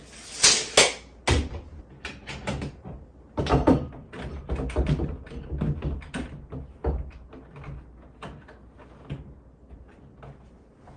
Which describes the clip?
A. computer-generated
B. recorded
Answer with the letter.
B